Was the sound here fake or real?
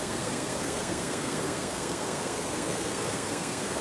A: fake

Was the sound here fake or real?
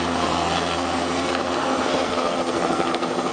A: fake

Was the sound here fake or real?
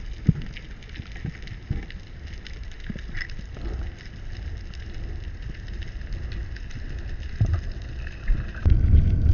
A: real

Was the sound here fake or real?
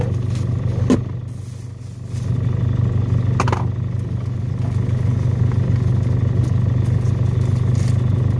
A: real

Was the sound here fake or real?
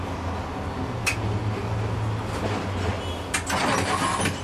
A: real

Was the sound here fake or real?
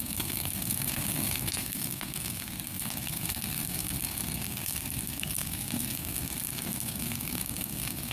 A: fake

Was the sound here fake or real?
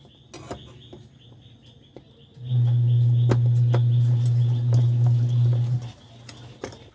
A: real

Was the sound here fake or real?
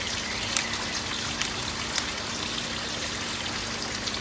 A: real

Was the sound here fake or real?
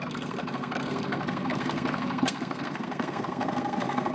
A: fake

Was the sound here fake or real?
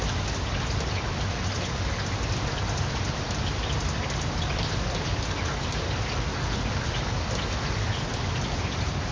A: real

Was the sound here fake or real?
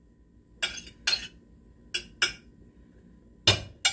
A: real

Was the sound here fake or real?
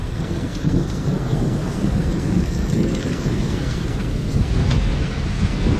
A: fake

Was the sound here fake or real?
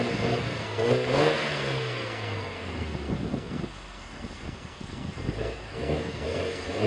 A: fake